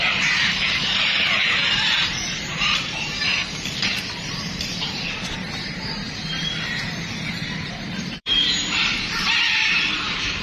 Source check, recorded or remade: remade